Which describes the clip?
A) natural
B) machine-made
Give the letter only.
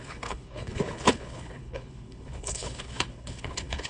B